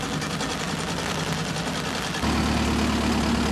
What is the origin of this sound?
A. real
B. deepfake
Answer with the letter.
A